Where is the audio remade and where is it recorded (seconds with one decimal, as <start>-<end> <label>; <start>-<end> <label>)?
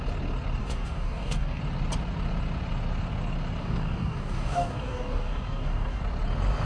0.0-0.6 recorded; 0.6-1.6 remade; 1.6-3.6 recorded; 3.6-6.0 remade; 6.0-6.7 recorded